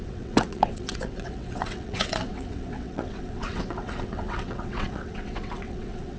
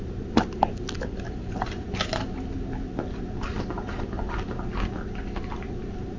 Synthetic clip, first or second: first